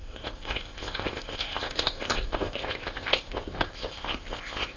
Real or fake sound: fake